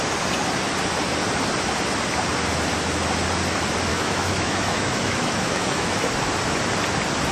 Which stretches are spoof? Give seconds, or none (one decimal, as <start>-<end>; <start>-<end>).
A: 3.9-6.1